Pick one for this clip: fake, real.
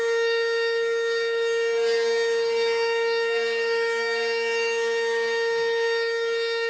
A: fake